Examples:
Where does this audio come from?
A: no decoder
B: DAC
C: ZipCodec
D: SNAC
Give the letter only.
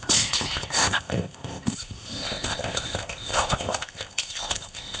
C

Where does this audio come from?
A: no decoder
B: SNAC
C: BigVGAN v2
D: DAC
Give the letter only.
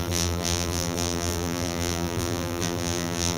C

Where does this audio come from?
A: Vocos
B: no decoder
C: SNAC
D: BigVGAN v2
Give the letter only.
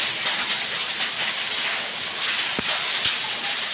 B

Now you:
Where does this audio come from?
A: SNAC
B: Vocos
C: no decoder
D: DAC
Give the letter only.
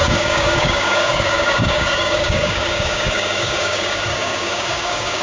D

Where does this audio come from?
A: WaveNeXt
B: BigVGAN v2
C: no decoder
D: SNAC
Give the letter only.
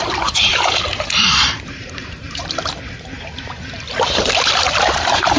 B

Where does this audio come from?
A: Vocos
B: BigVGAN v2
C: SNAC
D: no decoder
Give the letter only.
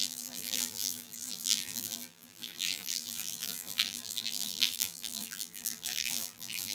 B